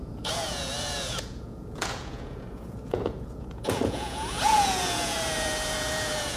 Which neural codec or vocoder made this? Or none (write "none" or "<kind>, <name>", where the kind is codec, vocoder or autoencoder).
vocoder, Vocos